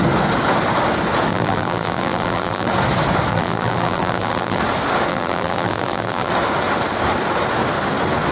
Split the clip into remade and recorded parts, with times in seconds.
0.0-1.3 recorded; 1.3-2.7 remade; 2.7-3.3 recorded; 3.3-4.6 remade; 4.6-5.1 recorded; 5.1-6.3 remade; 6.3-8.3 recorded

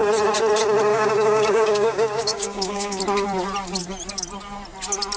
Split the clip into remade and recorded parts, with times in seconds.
0.0-0.9 recorded; 0.9-3.0 remade; 3.0-5.2 recorded

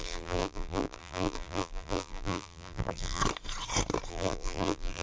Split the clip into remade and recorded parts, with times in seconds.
0.0-3.2 remade; 3.2-4.1 recorded; 4.1-5.0 remade